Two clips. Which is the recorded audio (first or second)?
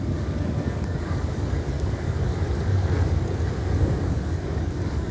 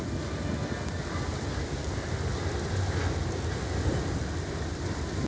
second